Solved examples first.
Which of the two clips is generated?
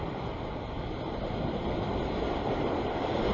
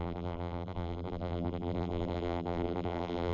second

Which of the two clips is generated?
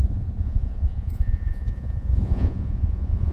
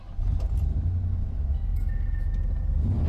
first